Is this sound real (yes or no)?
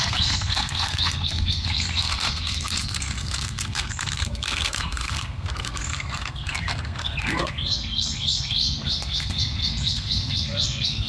no